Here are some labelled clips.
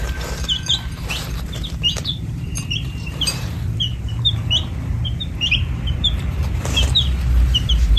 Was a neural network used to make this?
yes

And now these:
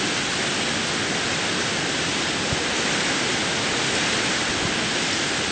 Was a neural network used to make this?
no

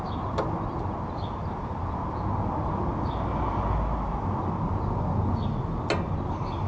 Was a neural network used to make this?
no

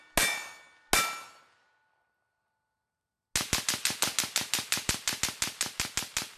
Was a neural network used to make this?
no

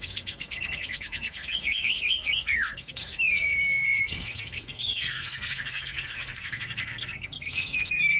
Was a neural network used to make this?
yes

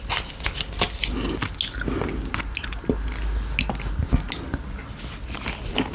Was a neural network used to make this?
no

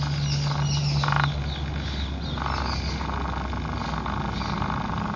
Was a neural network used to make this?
no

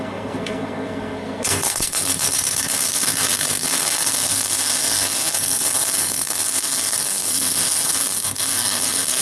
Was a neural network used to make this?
yes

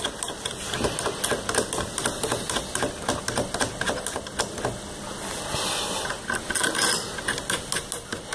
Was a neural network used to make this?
no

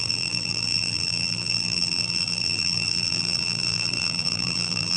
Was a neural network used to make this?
yes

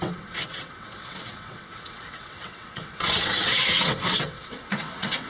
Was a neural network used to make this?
yes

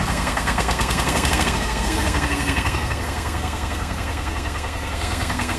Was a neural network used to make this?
yes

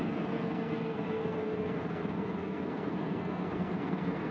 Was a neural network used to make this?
yes